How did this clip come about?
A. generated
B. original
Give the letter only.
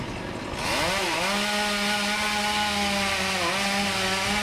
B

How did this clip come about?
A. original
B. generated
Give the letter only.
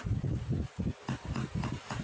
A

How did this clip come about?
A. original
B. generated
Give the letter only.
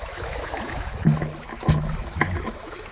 B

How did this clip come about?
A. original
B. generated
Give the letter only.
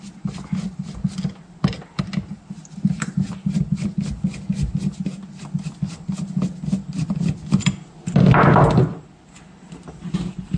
A